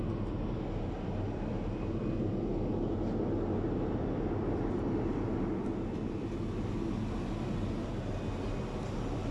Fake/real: real